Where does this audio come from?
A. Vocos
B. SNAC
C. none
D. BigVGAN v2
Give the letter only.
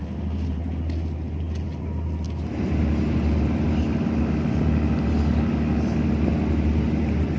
C